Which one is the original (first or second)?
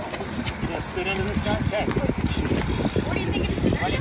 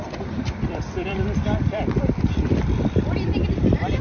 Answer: first